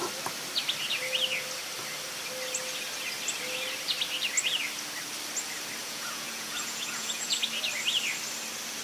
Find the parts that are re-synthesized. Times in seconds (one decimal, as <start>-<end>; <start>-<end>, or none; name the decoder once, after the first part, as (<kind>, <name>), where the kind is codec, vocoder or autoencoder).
5.8-7.3 (vocoder, Vocos)